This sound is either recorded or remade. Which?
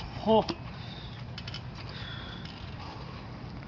recorded